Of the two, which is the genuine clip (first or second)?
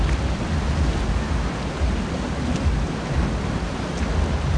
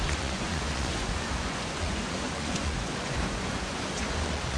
first